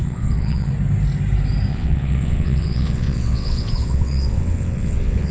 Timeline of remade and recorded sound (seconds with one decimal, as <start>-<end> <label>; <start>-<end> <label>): 0.0-0.7 remade; 0.7-1.7 recorded; 1.7-5.3 remade